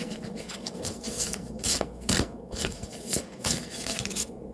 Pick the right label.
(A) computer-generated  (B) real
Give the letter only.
A